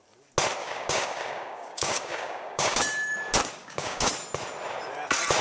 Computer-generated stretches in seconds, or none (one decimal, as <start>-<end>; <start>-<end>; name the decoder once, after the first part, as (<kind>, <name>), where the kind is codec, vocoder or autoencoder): 0.6-2.8 (codec, DAC); 3.6-4.1